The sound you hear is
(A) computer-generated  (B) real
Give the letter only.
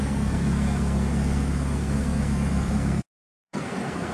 A